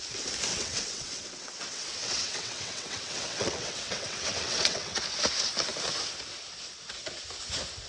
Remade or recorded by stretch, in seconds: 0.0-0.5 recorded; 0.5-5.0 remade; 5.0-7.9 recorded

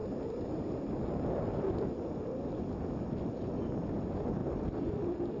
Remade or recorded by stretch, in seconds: 0.0-5.4 recorded

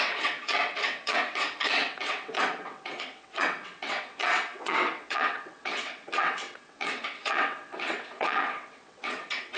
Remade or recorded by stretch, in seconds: 0.0-9.6 remade